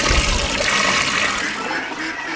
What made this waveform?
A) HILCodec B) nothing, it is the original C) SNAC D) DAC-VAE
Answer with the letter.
B